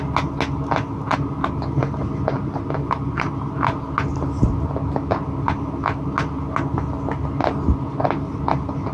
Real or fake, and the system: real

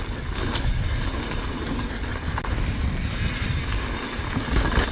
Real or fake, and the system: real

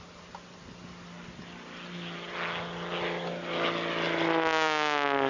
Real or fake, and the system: real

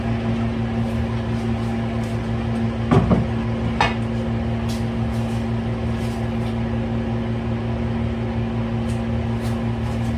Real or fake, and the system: real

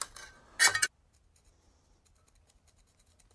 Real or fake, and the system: real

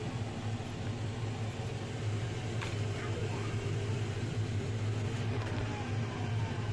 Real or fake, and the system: real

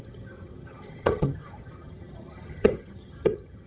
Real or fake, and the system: fake, vocoder, HiFi-GAN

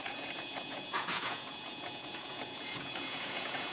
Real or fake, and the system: fake, vocoder, Vocos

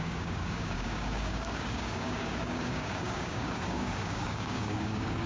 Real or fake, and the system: fake, codec, DAC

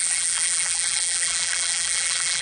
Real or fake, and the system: fake, vocoder, BigVGAN v2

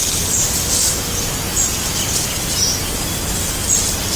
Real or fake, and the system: real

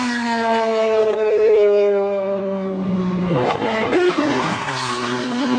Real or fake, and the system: fake, codec, SNAC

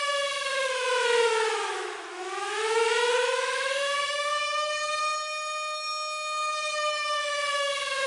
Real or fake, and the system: fake, autoencoder, DAC-VAE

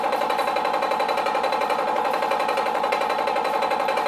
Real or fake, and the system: fake, vocoder, BigVGAN v2